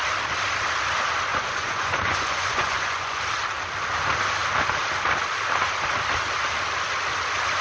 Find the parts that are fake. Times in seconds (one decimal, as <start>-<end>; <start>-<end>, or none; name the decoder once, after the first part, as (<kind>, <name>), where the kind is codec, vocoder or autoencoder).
1.3-3.2 (vocoder, Vocos)